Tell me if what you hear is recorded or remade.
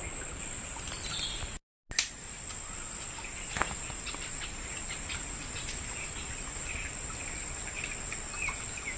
recorded